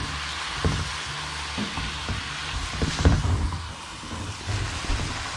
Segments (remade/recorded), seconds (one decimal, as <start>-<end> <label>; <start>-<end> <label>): 0.0-5.4 recorded